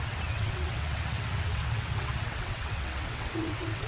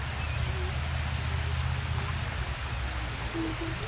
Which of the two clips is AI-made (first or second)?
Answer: first